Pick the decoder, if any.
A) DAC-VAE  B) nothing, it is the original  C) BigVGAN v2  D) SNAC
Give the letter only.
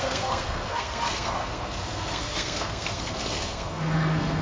D